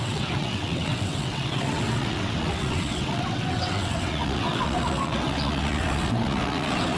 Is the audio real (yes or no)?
no